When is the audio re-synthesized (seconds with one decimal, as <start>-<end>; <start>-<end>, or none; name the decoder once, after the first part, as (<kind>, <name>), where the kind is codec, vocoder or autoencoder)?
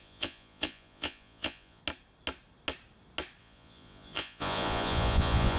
0.0-1.8 (vocoder, Vocos); 3.4-5.6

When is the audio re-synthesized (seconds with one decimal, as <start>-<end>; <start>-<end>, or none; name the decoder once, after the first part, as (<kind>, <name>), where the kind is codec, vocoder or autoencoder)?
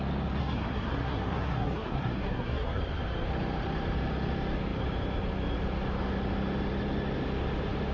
0.4-2.8 (codec, SNAC)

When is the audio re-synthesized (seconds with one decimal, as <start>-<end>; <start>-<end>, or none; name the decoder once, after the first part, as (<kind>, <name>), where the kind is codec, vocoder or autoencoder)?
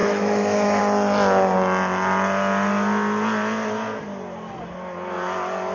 0.0-0.8 (autoencoder, DAC-VAE)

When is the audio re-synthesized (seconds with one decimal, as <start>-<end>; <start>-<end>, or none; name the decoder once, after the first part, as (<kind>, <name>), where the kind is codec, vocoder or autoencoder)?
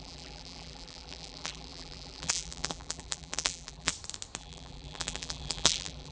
0.0-3.9 (vocoder, BigVGAN v2); 4.4-6.1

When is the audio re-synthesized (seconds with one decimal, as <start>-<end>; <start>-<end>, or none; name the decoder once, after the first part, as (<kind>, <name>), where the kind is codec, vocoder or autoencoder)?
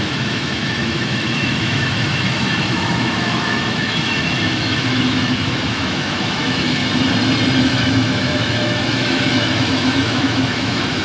0.0-6.8 (autoencoder, DAC-VAE); 7.6-11.0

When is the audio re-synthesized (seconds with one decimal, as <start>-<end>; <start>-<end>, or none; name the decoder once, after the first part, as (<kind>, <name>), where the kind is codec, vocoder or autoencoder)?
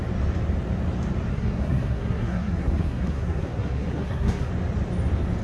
1.3-4.5 (codec, SNAC)